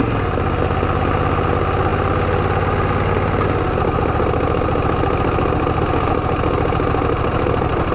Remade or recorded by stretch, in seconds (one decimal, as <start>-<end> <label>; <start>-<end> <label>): 0.0-7.9 recorded